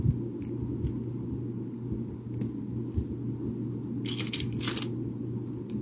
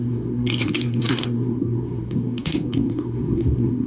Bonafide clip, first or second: first